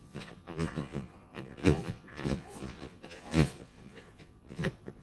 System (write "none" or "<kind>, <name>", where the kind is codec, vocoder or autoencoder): vocoder, Vocos